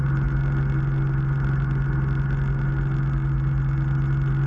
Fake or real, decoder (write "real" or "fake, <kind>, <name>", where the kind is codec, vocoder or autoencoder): real